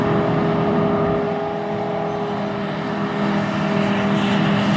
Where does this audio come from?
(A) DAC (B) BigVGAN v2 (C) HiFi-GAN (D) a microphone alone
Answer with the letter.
D